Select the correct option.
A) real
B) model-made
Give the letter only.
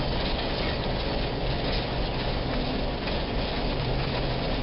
B